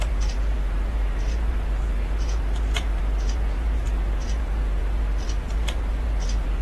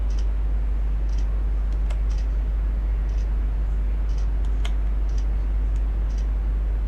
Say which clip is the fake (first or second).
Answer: first